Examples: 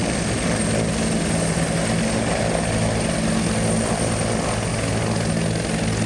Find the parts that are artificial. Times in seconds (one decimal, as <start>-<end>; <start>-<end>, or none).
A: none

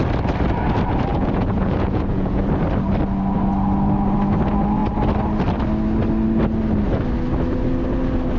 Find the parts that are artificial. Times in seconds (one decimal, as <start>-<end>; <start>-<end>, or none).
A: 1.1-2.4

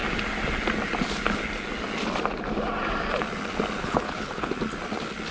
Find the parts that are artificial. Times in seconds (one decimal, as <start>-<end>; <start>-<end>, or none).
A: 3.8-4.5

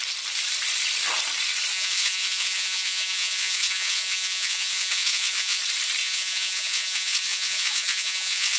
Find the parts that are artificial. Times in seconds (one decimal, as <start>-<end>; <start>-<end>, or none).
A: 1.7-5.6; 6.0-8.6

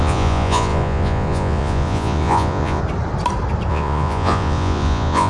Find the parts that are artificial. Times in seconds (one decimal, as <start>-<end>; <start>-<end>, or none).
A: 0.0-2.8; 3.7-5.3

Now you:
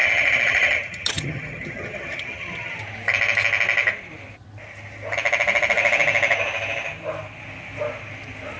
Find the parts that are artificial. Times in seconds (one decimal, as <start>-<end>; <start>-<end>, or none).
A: 0.0-2.8

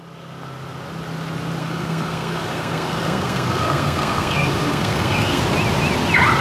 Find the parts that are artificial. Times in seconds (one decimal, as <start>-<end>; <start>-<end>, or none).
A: 1.6-5.4

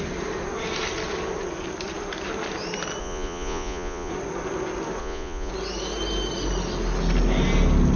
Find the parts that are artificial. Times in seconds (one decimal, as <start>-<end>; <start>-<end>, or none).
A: 3.0-4.1; 5.0-5.5